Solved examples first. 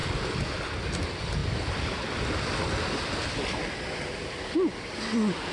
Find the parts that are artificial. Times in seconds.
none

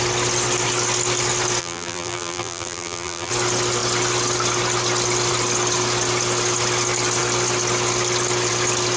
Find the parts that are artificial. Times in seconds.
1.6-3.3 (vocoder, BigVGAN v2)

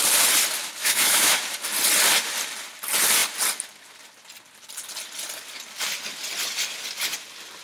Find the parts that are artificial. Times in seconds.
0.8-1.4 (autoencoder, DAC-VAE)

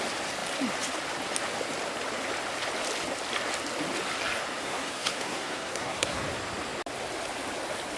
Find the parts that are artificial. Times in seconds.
4.6-6.2 (codec, SNAC)

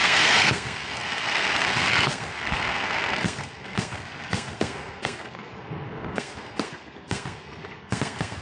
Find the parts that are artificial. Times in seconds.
0.0-8.4 (codec, SNAC)